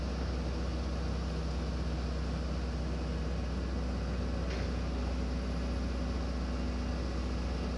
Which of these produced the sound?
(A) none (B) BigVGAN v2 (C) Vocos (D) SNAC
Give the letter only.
A